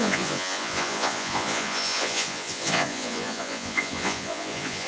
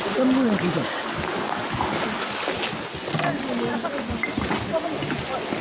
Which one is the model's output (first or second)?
first